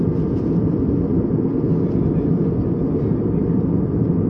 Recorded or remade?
recorded